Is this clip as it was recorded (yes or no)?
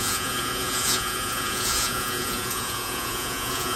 no